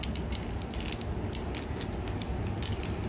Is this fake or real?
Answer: real